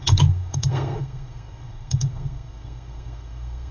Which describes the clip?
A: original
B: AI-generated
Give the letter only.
B